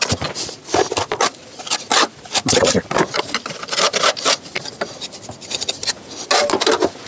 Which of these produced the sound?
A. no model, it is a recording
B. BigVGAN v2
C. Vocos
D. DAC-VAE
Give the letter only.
A